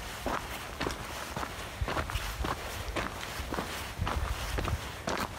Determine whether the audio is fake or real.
real